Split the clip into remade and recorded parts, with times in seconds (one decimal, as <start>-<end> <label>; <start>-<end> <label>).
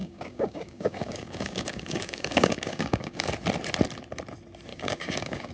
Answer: 0.0-3.3 remade; 3.3-4.7 recorded; 4.7-5.5 remade